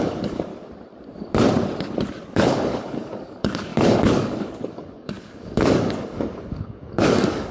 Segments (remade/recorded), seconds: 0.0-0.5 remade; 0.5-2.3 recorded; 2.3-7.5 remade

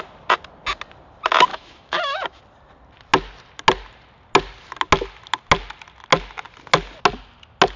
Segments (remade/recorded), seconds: 0.0-1.5 recorded; 1.5-2.4 remade; 2.4-7.8 recorded

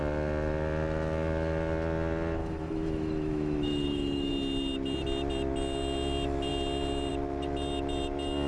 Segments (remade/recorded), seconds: 0.0-2.4 recorded; 2.4-4.3 remade; 4.3-8.5 recorded

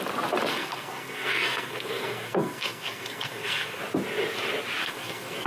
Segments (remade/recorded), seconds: 0.0-0.5 recorded; 0.5-3.8 remade; 3.8-4.8 recorded; 4.8-5.5 remade

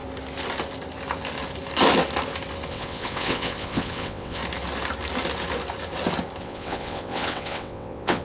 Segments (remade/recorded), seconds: 0.0-2.7 recorded; 2.7-4.4 remade; 4.4-6.4 recorded; 6.4-8.2 remade

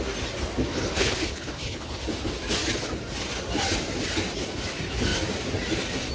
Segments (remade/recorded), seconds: 0.0-0.7 recorded; 0.7-2.0 remade; 2.0-6.1 recorded

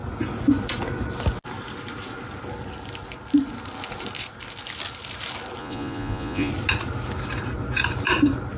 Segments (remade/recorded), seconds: 0.0-5.6 recorded; 5.6-6.5 remade; 6.5-8.6 recorded

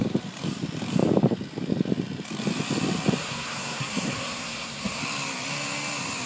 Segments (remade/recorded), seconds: 0.0-3.2 recorded; 3.2-5.0 remade; 5.0-6.3 recorded